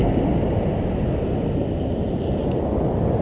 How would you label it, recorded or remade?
recorded